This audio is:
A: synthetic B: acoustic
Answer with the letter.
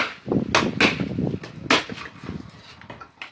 B